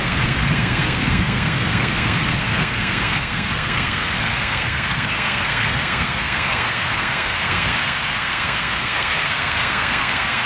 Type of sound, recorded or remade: remade